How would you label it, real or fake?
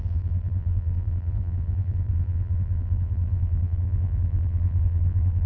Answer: fake